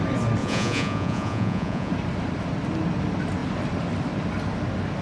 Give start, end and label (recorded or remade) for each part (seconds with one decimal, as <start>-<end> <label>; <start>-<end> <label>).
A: 0.0-0.4 recorded; 0.4-1.9 remade; 1.9-5.0 recorded